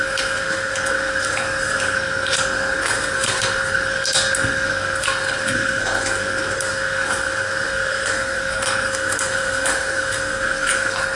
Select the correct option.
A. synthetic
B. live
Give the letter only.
A